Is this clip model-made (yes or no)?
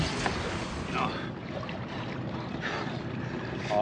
no